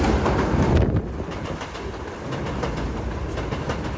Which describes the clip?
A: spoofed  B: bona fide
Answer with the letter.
B